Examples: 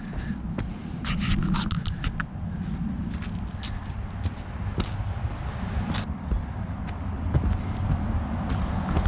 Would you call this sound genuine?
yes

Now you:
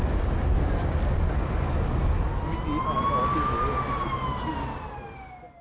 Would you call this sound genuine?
yes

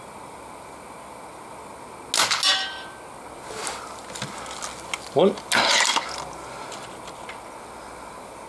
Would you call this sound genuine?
yes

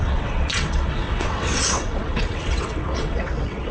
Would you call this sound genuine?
no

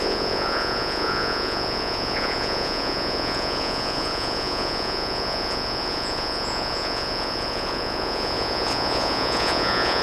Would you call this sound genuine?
no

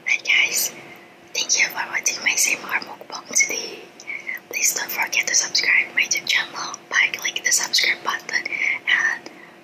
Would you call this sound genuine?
yes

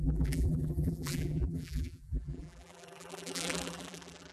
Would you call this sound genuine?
no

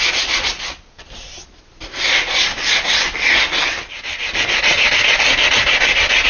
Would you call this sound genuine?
yes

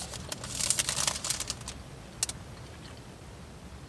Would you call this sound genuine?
yes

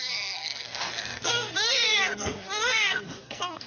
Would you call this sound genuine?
no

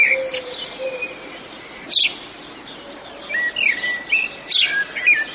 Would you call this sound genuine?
yes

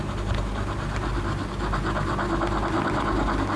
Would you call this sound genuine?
yes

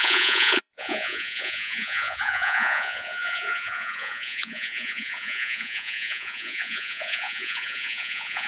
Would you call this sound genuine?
no